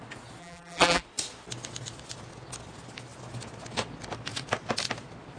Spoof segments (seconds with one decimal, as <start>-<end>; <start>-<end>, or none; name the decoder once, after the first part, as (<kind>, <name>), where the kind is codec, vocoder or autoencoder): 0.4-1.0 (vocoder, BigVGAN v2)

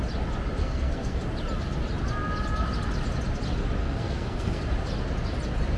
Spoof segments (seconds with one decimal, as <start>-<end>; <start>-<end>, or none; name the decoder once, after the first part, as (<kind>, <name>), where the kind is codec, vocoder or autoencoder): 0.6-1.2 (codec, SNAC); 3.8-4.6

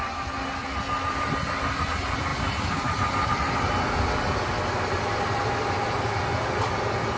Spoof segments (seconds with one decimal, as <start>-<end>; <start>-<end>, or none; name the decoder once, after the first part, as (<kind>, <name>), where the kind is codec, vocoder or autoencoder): none